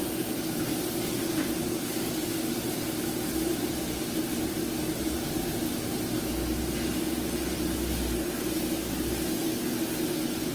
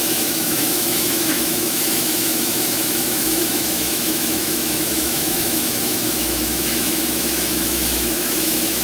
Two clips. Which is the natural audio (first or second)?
first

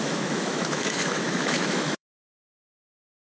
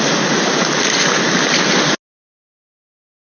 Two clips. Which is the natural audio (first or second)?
second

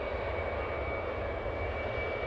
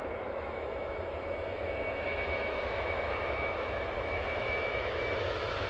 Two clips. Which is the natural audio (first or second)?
first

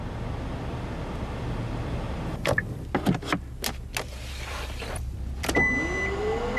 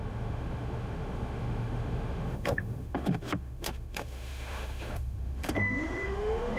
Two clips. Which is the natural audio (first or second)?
first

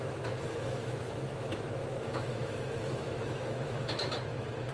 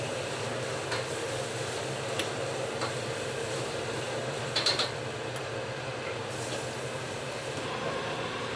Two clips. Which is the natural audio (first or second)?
second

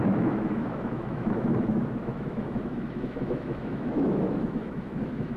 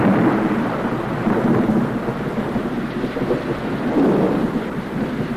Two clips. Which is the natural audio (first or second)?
second